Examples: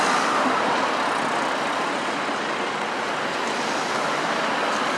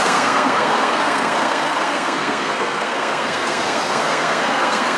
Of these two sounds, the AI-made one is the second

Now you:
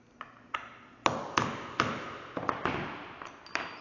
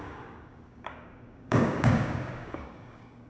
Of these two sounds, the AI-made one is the second